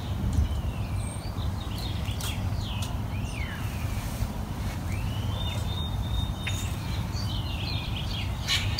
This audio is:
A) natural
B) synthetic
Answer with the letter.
B